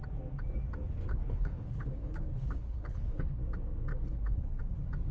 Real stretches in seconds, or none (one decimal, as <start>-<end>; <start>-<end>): 0.0-1.1; 3.4-3.9; 4.6-5.1